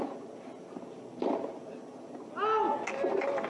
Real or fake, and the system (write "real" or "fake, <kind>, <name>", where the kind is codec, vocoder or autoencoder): real